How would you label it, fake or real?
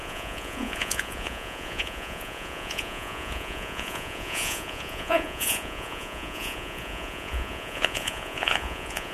fake